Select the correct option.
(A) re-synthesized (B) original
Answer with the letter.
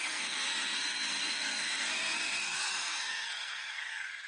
A